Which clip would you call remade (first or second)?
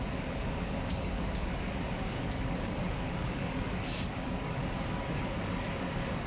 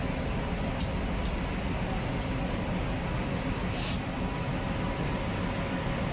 first